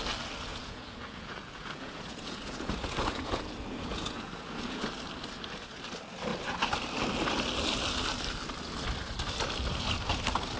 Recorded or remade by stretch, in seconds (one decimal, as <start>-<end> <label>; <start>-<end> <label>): 0.0-0.5 recorded; 0.5-4.9 remade; 4.9-10.6 recorded